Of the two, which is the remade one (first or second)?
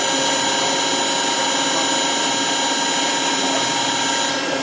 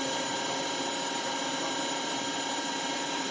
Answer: second